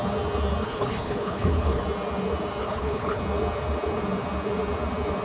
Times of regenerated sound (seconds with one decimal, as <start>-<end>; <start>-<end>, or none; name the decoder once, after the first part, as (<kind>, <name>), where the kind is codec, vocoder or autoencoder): 0.6-1.8 (codec, HILCodec); 2.6-3.2